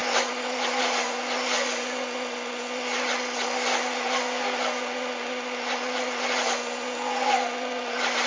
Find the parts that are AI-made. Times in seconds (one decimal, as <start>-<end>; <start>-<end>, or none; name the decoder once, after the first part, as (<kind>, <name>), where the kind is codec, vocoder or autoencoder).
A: none

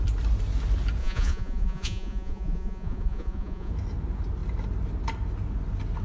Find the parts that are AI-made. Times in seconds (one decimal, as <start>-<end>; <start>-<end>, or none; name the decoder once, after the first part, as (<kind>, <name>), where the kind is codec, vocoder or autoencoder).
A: 1.0-3.7 (vocoder, Vocos)

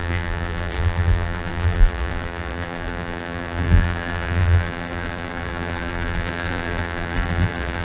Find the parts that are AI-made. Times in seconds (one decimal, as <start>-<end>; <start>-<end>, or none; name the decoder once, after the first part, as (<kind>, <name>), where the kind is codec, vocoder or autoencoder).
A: 0.0-7.8 (vocoder, BigVGAN v2)

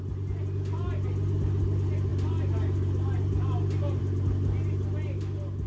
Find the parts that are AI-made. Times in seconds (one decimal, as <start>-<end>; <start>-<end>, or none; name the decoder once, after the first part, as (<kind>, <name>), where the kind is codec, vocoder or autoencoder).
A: none

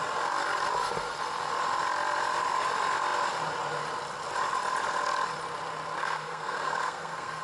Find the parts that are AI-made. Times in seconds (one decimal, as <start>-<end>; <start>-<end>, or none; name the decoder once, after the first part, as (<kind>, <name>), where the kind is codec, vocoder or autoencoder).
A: 6.0-7.4 (codec, SNAC)

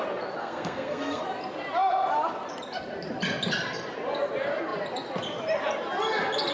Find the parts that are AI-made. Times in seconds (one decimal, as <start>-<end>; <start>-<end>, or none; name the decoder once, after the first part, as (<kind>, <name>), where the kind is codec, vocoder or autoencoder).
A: 0.4-1.2 (codec, SNAC)